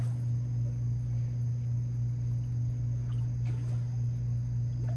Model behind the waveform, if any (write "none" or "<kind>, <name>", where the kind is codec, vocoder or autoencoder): none